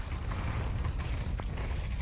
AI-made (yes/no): no